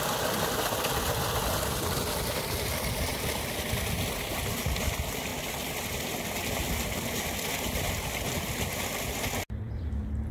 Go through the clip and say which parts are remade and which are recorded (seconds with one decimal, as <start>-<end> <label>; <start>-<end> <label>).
0.0-10.3 recorded